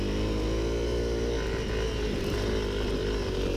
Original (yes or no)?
yes